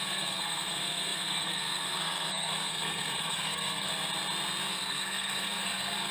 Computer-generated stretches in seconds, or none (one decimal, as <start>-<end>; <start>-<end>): 0.0-3.9; 4.7-6.1